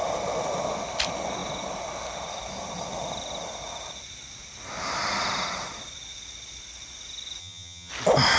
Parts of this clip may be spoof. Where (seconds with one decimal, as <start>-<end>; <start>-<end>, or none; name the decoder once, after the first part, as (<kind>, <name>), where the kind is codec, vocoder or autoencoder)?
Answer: 7.4-7.9 (vocoder, HiFi-GAN)